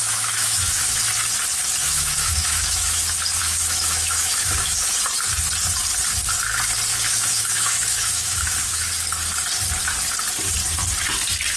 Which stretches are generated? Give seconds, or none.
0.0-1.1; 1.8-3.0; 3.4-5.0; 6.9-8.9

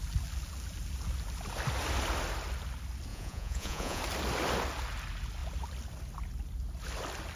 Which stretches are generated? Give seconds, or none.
3.1-4.0

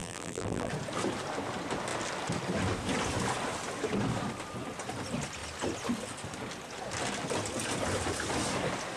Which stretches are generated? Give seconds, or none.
0.0-0.7

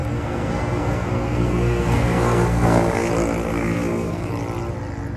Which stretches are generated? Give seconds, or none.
0.0-3.1; 3.5-4.3

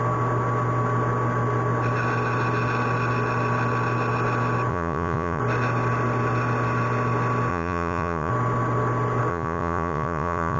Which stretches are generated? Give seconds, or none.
4.7-5.4; 7.5-8.3; 9.3-10.6

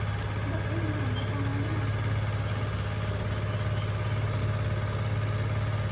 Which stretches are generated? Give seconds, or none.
none

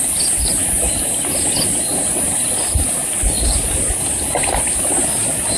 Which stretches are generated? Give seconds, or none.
none

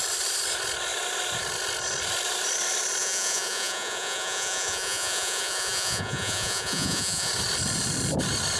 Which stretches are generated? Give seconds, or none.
3.0-7.3